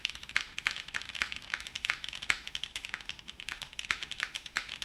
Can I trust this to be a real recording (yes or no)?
no